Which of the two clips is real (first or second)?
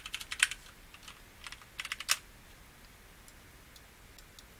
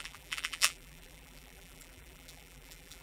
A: first